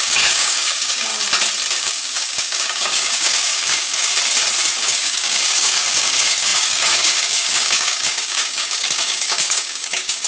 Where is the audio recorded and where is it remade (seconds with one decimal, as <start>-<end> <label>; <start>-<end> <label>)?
0.0-1.1 remade; 1.1-1.7 recorded; 1.7-4.1 remade; 4.1-4.8 recorded; 4.8-10.3 remade